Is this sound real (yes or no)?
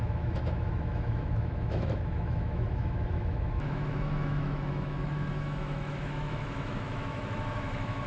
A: no